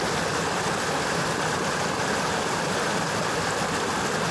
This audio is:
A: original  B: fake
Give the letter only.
A